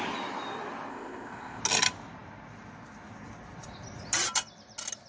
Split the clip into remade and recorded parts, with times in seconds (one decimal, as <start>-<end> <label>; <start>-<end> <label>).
0.0-0.9 recorded; 0.9-1.6 remade; 1.6-5.1 recorded